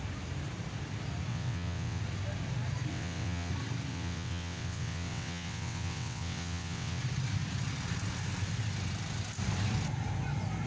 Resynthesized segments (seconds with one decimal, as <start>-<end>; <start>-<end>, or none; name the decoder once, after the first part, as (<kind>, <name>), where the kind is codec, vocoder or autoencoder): 1.3-2.0 (vocoder, WaveNeXt); 2.9-3.5; 3.9-7.0